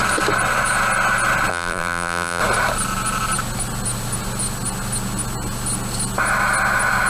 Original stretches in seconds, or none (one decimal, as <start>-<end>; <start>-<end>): 0.0-1.5; 2.4-7.1